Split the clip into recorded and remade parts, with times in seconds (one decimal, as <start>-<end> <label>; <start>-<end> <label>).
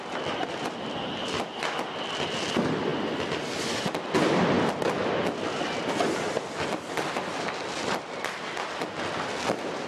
0.0-9.9 recorded